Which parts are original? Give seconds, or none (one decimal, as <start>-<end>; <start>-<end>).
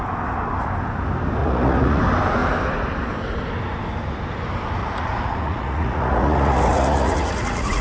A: 0.0-1.4; 2.0-4.8